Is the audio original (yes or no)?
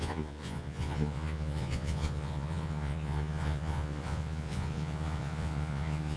no